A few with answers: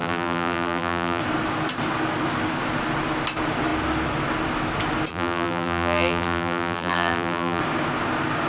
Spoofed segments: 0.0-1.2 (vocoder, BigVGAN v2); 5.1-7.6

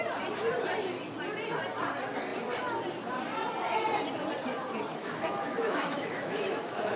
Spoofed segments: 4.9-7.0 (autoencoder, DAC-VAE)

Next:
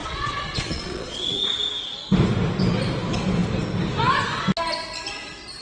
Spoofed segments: 0.0-1.5 (vocoder, Vocos)

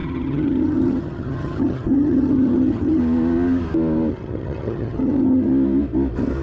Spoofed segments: 0.0-3.0 (vocoder, HiFi-GAN); 4.1-5.5